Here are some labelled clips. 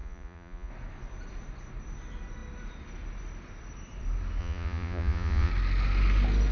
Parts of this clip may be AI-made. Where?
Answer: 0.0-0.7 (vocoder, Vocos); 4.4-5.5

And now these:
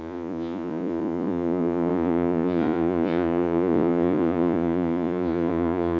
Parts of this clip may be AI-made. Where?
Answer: 0.0-6.0 (vocoder, Vocos)

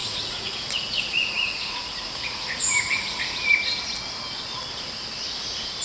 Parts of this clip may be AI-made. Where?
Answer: 0.0-3.5 (vocoder, Vocos)

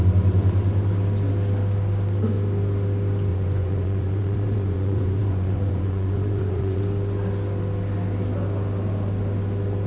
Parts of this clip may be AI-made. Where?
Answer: 3.3-6.8 (vocoder, Vocos)

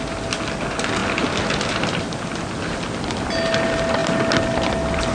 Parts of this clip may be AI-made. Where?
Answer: none

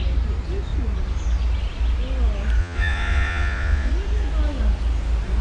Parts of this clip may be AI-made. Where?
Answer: 2.6-3.9 (vocoder, Vocos)

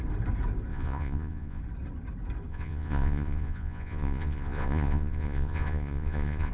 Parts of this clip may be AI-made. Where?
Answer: 0.7-1.6 (vocoder, Vocos); 2.5-6.5

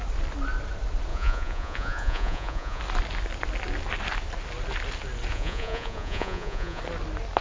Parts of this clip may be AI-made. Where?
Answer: 1.1-2.8 (vocoder, Vocos); 5.3-6.8